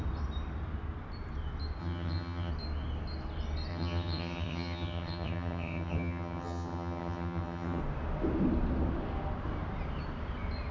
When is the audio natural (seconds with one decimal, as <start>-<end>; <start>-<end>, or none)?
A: 0.0-1.8; 2.5-3.7; 7.8-10.7